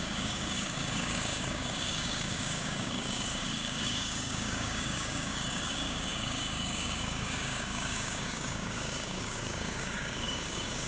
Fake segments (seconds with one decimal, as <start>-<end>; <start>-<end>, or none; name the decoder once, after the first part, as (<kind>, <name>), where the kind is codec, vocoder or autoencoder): 0.0-10.9 (codec, DAC)